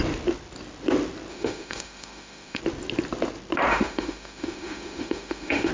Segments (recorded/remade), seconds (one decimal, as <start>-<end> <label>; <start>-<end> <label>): 0.0-1.3 recorded; 1.3-2.6 remade; 2.6-3.7 recorded; 3.7-5.7 remade

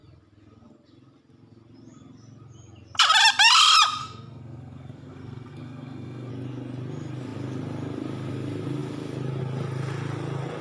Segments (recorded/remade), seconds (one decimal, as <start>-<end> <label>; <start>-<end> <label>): 0.0-4.0 recorded; 4.0-6.3 remade; 6.3-10.6 recorded

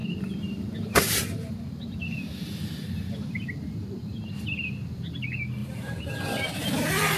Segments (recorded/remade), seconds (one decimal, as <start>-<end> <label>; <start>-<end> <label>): 0.0-4.3 remade; 4.3-5.6 recorded; 5.6-6.6 remade; 6.6-7.2 recorded

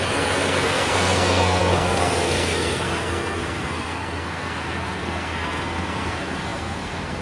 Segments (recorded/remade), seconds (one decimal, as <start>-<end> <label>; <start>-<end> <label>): 0.0-7.2 remade

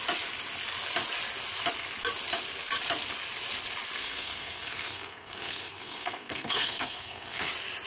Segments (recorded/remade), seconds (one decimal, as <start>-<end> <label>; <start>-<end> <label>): 0.0-4.0 recorded; 4.0-7.5 remade; 7.5-7.9 recorded

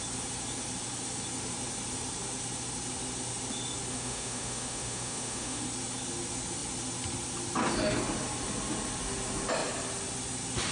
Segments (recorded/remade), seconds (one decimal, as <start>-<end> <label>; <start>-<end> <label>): 0.0-3.9 recorded; 3.9-5.6 remade; 5.6-10.7 recorded

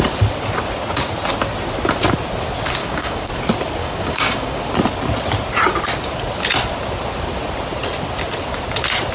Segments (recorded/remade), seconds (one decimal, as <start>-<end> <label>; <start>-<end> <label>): 0.0-2.8 recorded; 2.8-3.3 remade; 3.3-3.8 recorded; 3.8-4.6 remade; 4.6-9.1 recorded

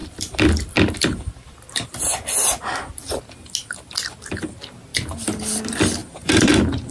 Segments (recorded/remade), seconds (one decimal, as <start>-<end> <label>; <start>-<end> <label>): 0.0-3.2 remade; 3.2-4.9 recorded; 4.9-5.6 remade; 5.6-6.0 recorded; 6.0-6.5 remade; 6.5-6.9 recorded